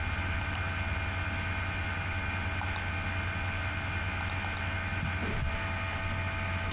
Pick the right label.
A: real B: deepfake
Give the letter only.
A